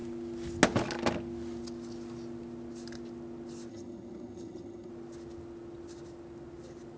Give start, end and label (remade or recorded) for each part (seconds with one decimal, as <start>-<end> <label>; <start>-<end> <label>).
0.0-3.7 recorded; 3.7-4.9 remade; 4.9-7.0 recorded